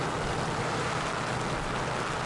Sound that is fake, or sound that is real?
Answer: real